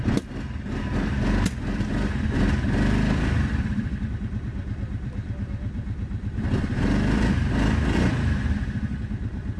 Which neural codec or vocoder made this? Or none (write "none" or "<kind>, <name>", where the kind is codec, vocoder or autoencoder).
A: vocoder, BigVGAN v2